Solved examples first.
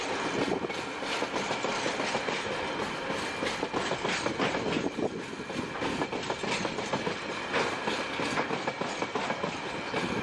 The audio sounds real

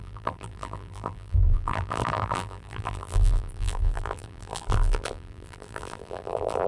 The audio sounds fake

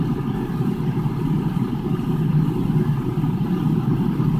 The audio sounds real